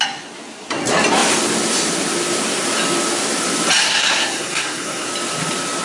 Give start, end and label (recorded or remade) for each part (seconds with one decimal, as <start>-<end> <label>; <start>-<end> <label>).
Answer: 0.0-3.8 recorded; 3.8-5.1 remade; 5.1-5.8 recorded